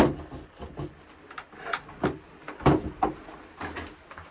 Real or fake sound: real